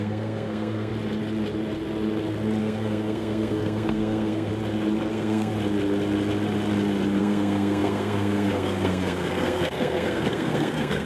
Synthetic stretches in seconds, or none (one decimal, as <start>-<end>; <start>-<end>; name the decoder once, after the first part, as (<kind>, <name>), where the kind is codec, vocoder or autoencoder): 0.0-0.9 (codec, SNAC); 2.6-4.5; 5.1-5.5; 7.2-11.1